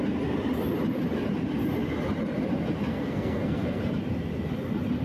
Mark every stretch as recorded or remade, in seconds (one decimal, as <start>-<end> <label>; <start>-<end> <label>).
0.0-2.9 recorded; 2.9-3.8 remade; 3.8-5.0 recorded